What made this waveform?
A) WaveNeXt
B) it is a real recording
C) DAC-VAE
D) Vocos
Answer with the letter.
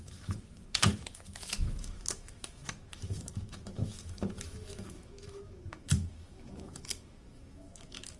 C